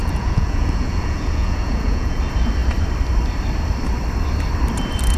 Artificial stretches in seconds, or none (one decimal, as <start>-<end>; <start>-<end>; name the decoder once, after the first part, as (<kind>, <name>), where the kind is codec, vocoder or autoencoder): 0.0-2.2 (vocoder, Vocos)